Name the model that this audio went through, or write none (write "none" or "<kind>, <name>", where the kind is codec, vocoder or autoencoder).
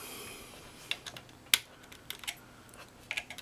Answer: none